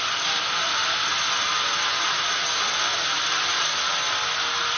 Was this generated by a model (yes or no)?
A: no